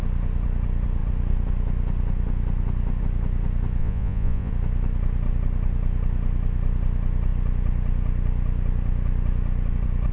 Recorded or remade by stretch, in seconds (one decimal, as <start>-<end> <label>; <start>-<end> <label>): 0.0-3.8 recorded; 3.8-4.5 remade; 4.5-10.1 recorded